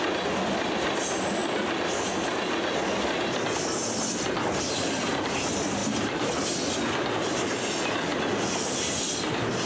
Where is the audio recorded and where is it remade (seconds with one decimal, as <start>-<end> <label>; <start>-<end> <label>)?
0.0-5.8 recorded; 5.8-6.3 remade; 6.3-9.7 recorded